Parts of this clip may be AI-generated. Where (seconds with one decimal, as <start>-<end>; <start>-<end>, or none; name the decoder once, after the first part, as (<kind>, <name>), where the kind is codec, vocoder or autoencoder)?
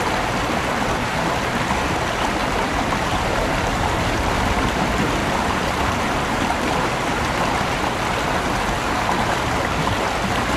2.4-4.3 (vocoder, BigVGAN v2); 5.2-7.3